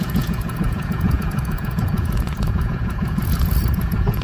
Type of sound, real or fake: fake